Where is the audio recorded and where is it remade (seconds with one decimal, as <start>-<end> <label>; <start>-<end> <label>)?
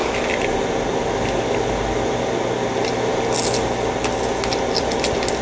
0.0-5.4 recorded